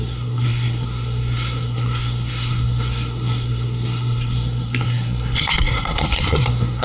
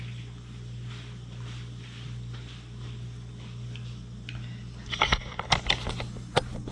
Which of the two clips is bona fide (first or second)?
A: second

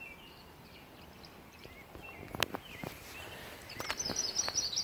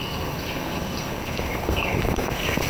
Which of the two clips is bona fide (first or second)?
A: first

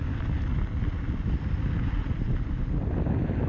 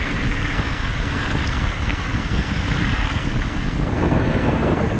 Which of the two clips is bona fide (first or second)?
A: first